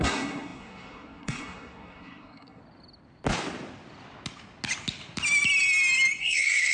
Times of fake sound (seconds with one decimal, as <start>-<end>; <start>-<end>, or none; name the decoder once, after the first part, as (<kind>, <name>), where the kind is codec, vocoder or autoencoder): 0.0-2.6 (codec, SNAC); 6.2-6.7